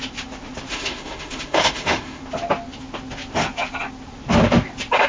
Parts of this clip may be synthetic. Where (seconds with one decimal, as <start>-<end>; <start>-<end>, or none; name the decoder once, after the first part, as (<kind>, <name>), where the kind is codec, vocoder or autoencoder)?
0.7-2.2 (autoencoder, DAC-VAE)